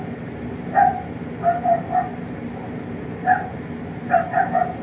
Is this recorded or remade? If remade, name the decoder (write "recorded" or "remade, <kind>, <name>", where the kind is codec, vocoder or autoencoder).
recorded